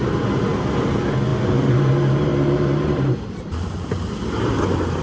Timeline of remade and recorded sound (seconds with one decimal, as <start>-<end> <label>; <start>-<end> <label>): 0.0-2.3 recorded; 2.3-4.1 remade; 4.1-5.0 recorded